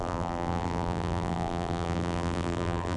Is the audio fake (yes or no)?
yes